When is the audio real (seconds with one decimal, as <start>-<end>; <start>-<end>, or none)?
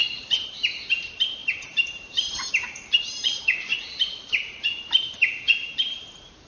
0.0-0.5